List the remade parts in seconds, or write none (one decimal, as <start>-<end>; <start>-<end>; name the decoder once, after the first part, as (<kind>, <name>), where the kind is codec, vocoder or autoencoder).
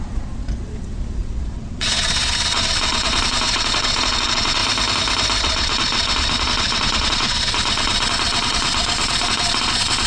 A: 0.0-4.6 (vocoder, Vocos); 5.4-10.1